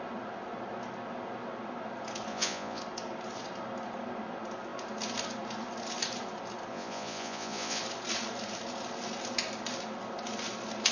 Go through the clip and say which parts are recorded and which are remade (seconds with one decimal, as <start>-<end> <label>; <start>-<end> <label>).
0.0-2.3 recorded; 2.3-2.8 remade; 2.8-6.7 recorded; 6.7-7.8 remade; 7.8-10.9 recorded